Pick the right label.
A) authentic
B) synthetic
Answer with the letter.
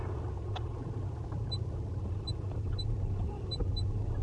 A